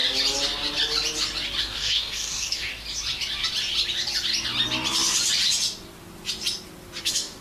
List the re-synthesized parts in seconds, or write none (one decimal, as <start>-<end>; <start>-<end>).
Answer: 1.6-2.7; 7.0-7.4